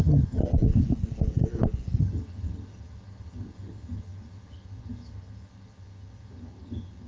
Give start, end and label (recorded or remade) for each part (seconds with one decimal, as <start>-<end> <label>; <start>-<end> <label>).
0.0-0.4 remade; 0.4-2.0 recorded; 2.0-7.1 remade